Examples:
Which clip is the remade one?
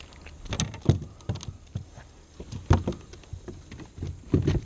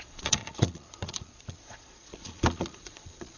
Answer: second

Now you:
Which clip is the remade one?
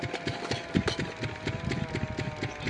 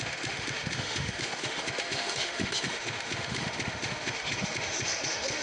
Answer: second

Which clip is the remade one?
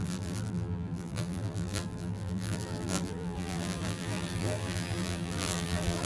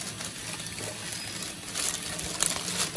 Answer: first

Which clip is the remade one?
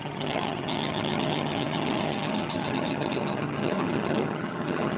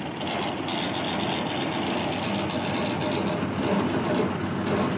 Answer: first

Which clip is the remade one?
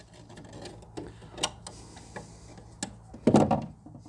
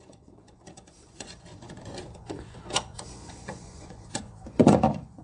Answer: second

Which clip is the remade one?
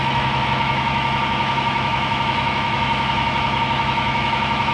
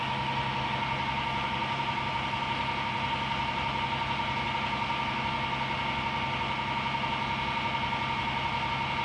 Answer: first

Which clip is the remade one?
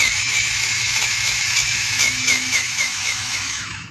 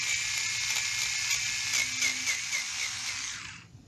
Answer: first